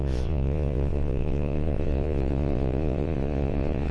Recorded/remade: remade